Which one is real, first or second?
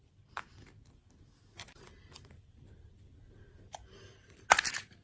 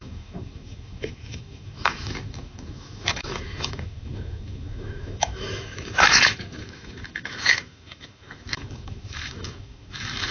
first